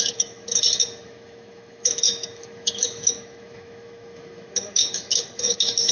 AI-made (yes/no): yes